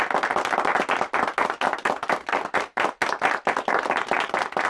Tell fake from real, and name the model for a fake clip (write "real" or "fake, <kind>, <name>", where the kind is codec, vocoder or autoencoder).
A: real